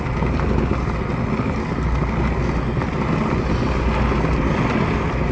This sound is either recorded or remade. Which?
recorded